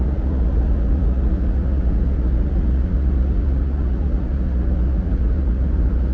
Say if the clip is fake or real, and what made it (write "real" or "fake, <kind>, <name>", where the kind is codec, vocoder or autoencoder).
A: fake, vocoder, Vocos